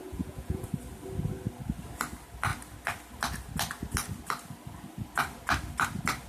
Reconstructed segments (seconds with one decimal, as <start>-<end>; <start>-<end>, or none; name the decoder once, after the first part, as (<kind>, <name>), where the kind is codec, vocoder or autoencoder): 0.0-0.7 (vocoder, Vocos)